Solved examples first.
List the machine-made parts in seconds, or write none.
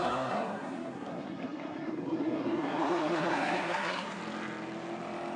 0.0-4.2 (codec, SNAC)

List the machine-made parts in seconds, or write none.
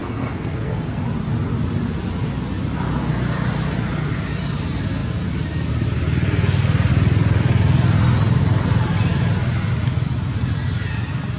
0.0-1.0 (codec, SNAC)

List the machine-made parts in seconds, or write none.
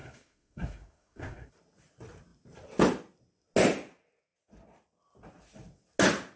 0.0-1.5 (codec, SNAC)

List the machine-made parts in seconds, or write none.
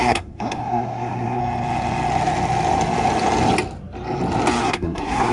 0.0-1.4 (codec, SNAC); 4.6-5.3